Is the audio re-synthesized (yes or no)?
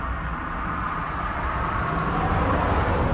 no